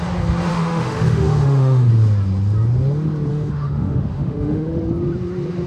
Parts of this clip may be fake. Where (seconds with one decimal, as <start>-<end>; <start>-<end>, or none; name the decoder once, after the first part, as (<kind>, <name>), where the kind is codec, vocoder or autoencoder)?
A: 0.5-1.9 (autoencoder, DAC-VAE); 3.3-4.8